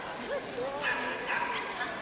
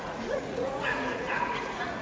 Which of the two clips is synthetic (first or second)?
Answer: second